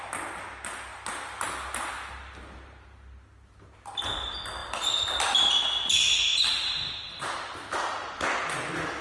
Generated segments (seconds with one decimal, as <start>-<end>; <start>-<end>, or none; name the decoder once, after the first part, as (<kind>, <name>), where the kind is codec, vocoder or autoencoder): 6.3-7.0 (vocoder, BigVGAN v2)